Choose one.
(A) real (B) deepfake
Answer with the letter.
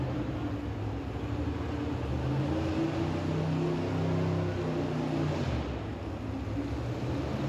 A